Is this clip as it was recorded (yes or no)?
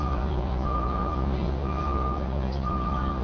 no